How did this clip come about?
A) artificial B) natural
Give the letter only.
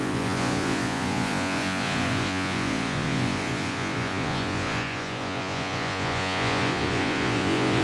A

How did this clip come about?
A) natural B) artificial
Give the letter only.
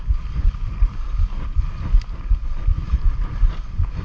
A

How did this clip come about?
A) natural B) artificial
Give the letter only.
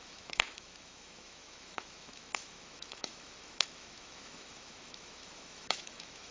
B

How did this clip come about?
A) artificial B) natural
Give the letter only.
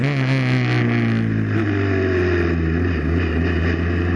B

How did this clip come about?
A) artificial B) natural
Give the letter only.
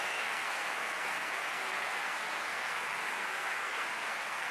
A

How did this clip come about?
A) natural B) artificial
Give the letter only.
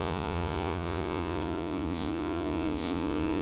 B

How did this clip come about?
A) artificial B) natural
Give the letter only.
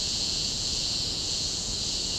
A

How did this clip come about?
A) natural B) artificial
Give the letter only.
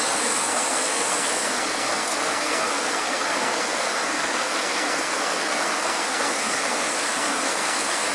B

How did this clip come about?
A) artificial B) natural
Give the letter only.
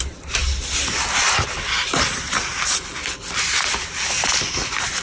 B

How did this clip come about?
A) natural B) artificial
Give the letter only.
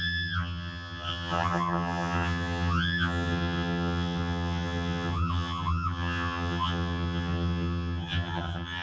B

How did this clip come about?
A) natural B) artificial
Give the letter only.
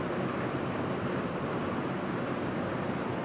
A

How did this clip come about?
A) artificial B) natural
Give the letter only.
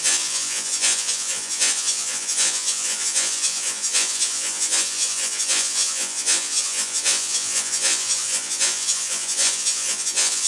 A